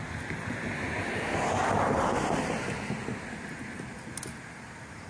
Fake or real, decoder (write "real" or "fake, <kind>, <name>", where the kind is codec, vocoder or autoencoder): real